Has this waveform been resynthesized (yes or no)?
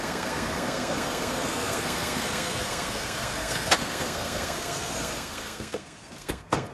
yes